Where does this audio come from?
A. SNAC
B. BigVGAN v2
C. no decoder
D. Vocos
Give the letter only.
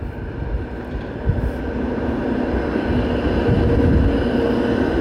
C